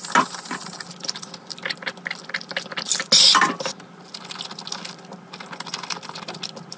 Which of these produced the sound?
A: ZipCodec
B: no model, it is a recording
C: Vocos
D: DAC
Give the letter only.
B